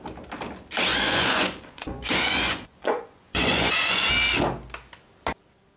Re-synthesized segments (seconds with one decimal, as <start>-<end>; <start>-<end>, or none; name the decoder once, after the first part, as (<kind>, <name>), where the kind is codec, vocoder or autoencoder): 0.9-4.1 (vocoder, Vocos)